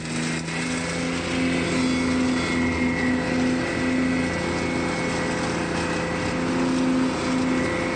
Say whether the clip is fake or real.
real